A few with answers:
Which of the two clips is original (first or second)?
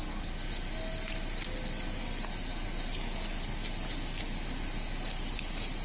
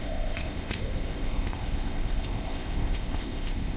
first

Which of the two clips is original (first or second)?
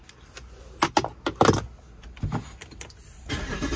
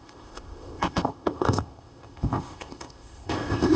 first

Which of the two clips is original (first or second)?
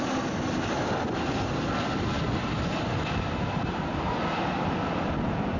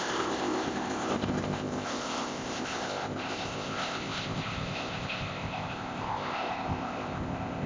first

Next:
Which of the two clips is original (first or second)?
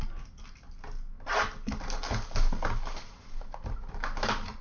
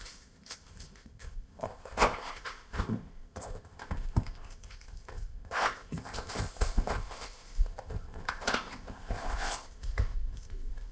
first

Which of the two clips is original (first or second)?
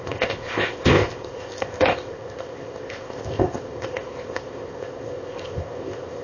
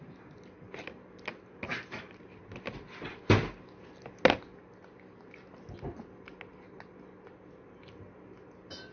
second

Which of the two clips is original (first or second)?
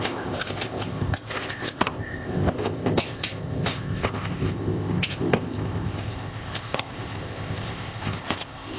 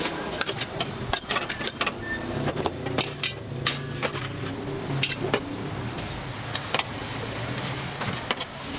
second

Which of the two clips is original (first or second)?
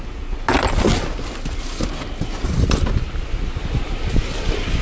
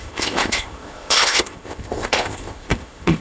first